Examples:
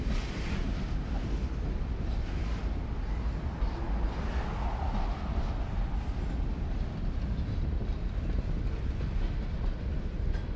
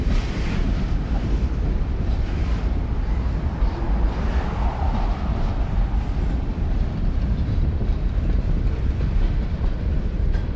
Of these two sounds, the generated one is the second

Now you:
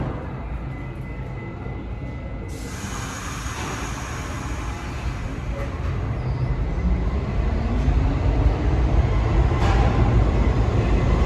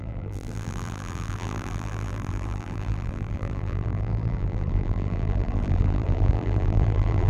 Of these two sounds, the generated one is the second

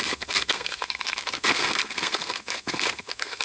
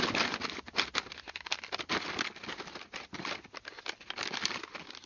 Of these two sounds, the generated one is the first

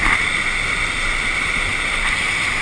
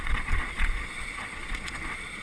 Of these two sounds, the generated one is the second